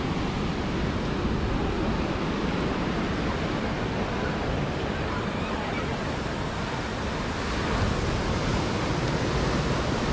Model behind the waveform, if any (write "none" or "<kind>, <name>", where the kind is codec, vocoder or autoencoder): none